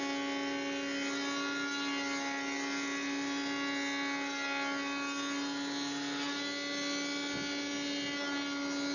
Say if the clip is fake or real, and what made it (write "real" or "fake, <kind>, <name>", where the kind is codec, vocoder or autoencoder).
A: real